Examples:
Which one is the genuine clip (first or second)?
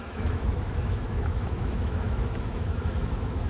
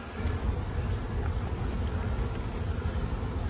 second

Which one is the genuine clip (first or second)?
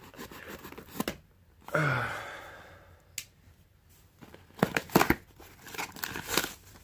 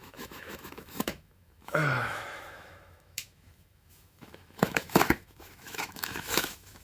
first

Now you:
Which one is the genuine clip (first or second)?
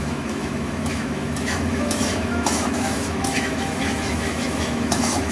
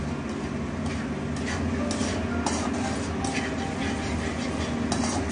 second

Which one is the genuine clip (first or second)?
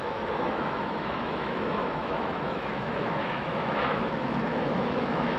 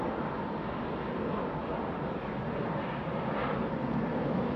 second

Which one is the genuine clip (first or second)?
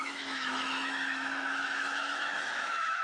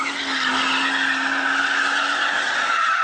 second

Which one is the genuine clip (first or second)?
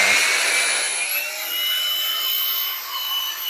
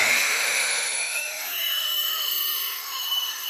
first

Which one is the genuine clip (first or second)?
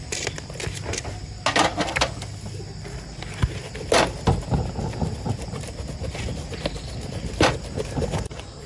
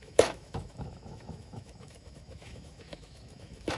first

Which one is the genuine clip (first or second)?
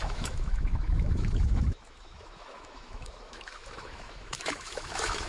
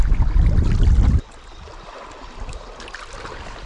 second